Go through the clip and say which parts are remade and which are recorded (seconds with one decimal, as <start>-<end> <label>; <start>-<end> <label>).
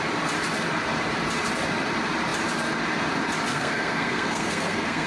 0.0-3.5 recorded; 3.5-5.1 remade